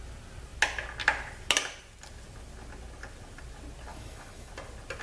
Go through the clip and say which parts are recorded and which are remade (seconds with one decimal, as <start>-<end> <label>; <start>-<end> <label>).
0.0-3.9 recorded; 3.9-4.5 remade; 4.5-5.0 recorded